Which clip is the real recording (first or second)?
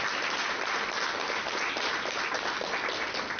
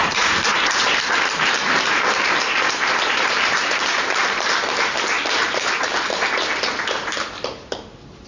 first